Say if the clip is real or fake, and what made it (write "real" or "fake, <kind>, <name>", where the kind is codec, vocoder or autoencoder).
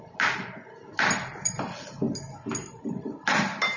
real